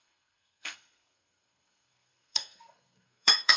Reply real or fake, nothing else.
fake